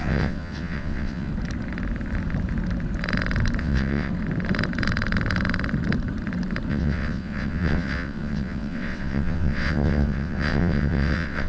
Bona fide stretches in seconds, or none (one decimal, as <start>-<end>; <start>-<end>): 1.3-3.6; 4.1-6.7

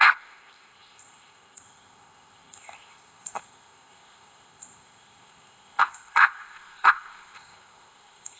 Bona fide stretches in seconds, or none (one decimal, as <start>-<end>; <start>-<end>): none